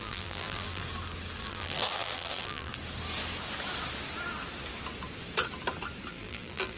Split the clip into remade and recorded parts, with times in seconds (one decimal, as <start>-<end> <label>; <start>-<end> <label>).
0.0-0.8 remade; 0.8-1.4 recorded; 1.4-2.7 remade; 2.7-6.1 recorded; 6.1-6.8 remade